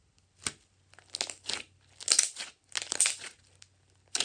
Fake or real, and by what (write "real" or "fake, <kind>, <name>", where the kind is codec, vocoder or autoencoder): real